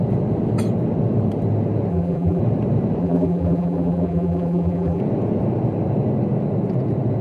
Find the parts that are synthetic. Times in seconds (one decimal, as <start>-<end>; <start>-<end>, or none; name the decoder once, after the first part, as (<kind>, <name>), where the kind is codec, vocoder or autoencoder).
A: 1.9-2.4 (vocoder, BigVGAN v2); 3.0-5.0